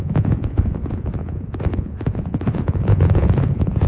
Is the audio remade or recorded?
remade